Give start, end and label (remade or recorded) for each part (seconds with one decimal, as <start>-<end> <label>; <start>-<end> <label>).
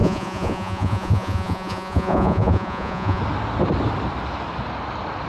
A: 0.0-3.2 remade; 3.2-5.3 recorded